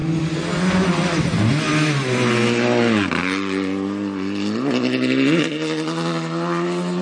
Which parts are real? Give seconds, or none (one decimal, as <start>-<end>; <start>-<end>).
0.0-7.0